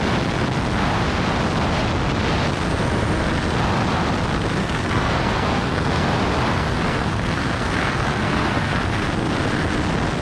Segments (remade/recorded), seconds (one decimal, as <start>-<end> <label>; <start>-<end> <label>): 0.0-4.6 recorded; 4.6-6.1 remade; 6.1-6.5 recorded; 6.5-8.8 remade; 8.8-10.2 recorded